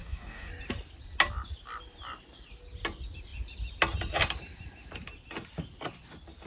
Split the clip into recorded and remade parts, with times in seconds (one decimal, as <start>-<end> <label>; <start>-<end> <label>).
0.0-0.5 remade; 0.5-6.5 recorded